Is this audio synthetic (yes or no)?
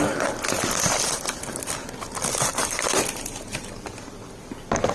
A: no